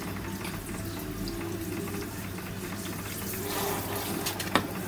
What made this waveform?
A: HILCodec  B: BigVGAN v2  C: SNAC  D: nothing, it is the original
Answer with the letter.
D